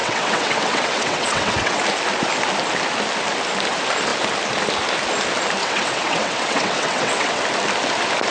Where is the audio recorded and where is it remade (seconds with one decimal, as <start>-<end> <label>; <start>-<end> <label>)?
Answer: 0.0-1.8 remade; 1.8-5.6 recorded; 5.6-7.4 remade; 7.4-8.3 recorded